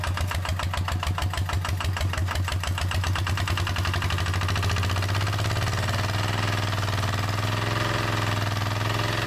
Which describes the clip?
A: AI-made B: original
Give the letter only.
B